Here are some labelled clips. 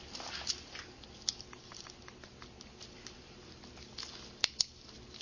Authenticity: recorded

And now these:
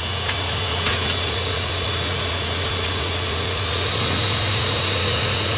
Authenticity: remade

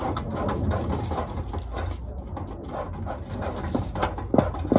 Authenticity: recorded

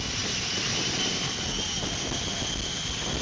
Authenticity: recorded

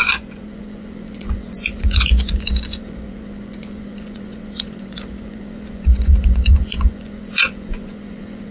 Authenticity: remade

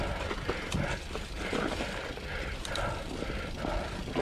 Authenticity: recorded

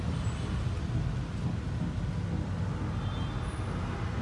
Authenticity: recorded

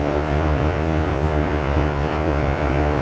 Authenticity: remade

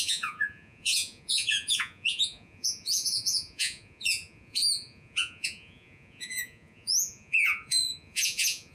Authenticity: remade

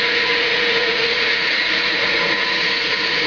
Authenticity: remade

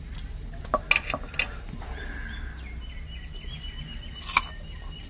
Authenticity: recorded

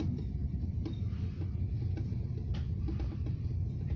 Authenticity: recorded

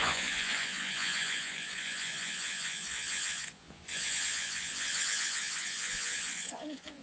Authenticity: remade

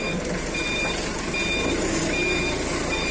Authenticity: recorded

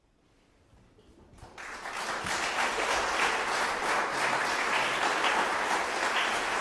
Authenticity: recorded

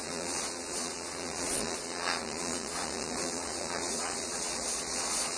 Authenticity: remade